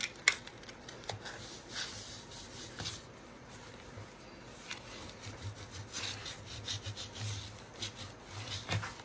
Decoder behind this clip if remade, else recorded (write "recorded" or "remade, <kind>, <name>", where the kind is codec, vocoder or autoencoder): recorded